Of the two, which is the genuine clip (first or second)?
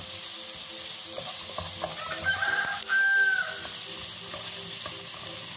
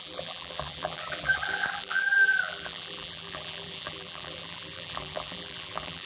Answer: first